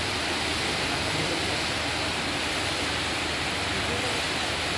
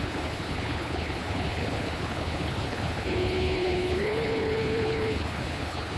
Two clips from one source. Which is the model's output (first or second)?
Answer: second